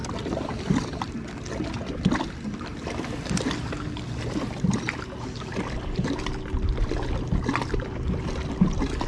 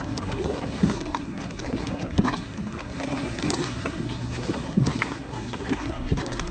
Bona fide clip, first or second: first